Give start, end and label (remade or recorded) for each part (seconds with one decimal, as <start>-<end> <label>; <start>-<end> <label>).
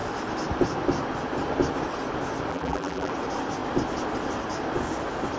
0.0-2.5 recorded; 2.5-3.1 remade; 3.1-5.4 recorded